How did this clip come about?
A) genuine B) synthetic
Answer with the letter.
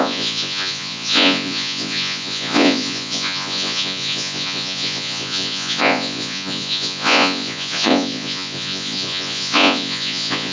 B